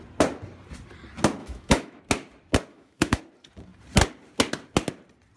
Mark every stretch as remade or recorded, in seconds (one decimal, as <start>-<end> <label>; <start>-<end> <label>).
0.0-1.4 recorded; 1.4-2.0 remade; 2.0-2.7 recorded; 2.7-3.2 remade; 3.2-5.4 recorded